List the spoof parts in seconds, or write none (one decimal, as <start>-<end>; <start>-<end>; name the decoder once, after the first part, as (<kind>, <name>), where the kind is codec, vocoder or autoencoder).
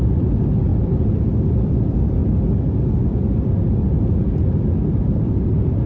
0.0-2.2 (vocoder, BigVGAN v2); 5.0-5.9